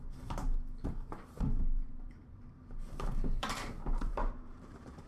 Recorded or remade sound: remade